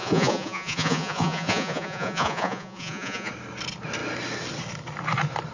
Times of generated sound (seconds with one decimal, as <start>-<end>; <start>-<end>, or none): 0.0-3.3